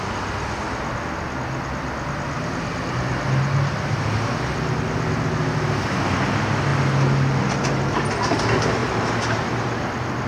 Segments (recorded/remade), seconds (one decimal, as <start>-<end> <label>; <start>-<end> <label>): 0.0-10.3 recorded